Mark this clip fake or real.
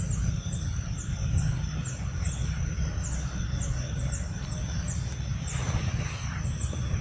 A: real